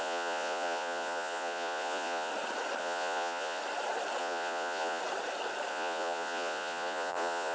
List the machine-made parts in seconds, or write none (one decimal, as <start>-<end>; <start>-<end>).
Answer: 0.0-2.3; 2.8-3.6; 4.2-5.0; 5.7-7.5